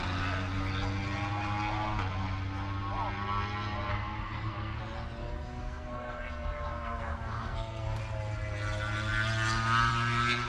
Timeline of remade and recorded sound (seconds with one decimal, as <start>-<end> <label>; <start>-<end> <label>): 0.0-3.9 recorded; 3.9-4.8 remade; 4.8-5.2 recorded; 5.2-8.0 remade; 8.0-10.5 recorded